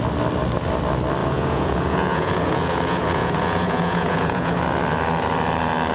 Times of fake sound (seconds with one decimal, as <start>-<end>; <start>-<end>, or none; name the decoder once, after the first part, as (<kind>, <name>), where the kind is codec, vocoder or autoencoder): 1.2-4.6 (vocoder, Vocos)